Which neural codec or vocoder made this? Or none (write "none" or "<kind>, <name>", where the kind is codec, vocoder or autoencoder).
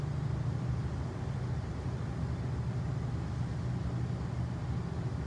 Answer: none